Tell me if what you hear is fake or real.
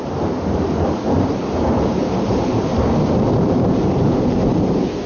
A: fake